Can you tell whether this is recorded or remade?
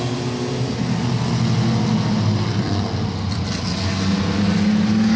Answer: recorded